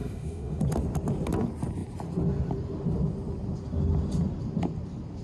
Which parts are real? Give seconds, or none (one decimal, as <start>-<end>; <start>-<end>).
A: 0.6-5.2